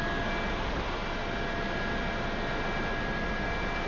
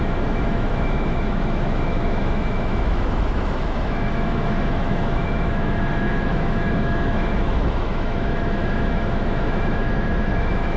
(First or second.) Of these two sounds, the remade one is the second